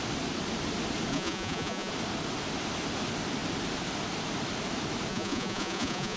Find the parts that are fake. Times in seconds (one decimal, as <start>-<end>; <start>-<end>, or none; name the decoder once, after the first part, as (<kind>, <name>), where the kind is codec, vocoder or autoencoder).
1.1-1.9 (vocoder, Vocos); 5.1-6.2